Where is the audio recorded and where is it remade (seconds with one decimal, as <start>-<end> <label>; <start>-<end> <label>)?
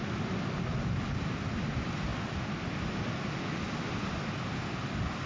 0.0-5.3 recorded